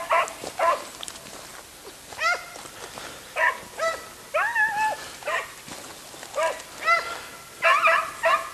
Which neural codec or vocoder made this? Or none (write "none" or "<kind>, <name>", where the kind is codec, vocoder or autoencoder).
none